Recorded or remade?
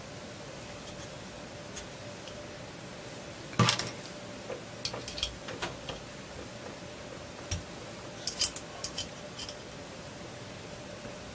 recorded